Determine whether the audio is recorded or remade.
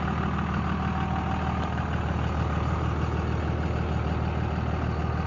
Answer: recorded